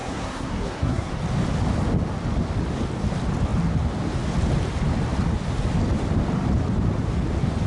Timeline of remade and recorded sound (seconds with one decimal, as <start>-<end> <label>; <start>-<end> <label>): 0.0-1.1 remade; 1.1-7.7 recorded